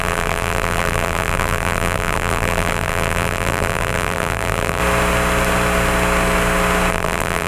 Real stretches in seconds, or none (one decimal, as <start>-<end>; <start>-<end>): 4.8-6.9